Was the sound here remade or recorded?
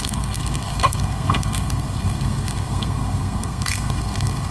remade